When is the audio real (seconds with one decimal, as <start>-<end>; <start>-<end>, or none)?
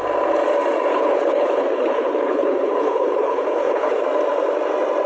0.0-0.9; 4.0-5.1